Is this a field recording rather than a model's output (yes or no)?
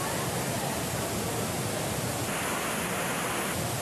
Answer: yes